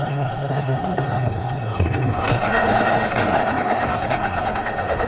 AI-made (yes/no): yes